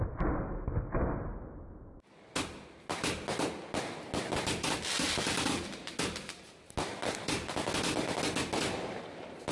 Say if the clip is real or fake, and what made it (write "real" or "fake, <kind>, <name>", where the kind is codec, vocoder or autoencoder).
real